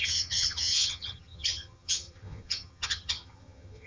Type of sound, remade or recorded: remade